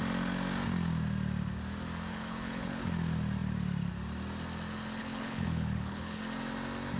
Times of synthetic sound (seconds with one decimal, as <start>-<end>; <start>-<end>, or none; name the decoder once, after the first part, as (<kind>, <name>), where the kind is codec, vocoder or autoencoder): 2.1-2.9 (codec, HILCodec); 5.0-6.2